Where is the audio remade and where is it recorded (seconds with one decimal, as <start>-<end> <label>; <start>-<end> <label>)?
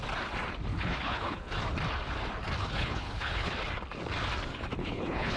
0.0-0.7 recorded; 0.7-1.6 remade; 1.6-2.6 recorded; 2.6-3.5 remade; 3.5-4.8 recorded; 4.8-5.4 remade